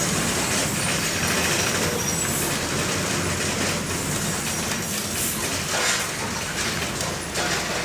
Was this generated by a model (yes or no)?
no